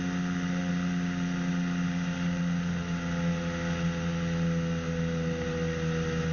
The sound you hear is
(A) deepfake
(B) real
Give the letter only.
B